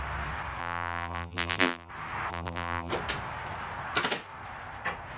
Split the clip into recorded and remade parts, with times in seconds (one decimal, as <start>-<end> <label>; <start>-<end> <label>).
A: 0.0-0.6 recorded; 0.6-1.9 remade; 1.9-2.3 recorded; 2.3-2.9 remade; 2.9-5.2 recorded